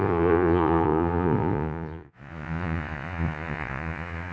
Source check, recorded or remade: remade